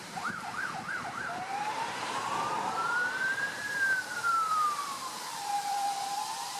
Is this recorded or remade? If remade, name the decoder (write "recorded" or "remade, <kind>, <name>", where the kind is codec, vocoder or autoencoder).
remade, vocoder, BigVGAN v2